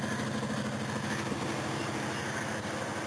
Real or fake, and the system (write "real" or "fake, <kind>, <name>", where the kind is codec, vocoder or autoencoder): real